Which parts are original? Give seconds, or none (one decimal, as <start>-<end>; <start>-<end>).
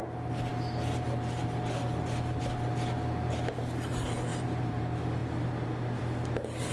0.0-4.3; 4.8-6.7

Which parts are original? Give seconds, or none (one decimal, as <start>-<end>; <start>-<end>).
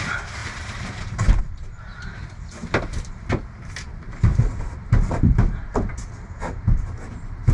5.9-6.6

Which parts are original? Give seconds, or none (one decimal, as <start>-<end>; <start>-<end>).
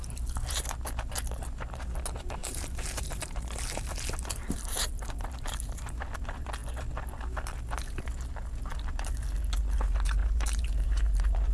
0.0-2.4; 6.1-10.2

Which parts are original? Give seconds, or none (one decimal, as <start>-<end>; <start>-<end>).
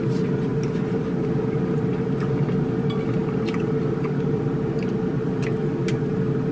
0.0-6.5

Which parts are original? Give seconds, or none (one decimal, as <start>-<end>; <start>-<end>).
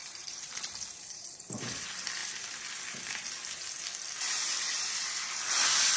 1.8-6.0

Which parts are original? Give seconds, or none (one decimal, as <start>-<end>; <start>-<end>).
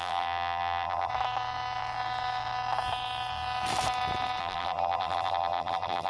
1.1-4.4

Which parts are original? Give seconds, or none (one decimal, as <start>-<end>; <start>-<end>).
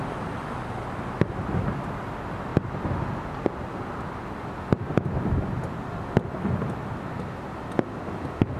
0.0-8.6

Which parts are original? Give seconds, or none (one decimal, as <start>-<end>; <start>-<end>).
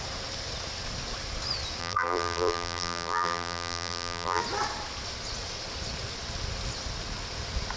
0.0-1.8; 4.4-7.8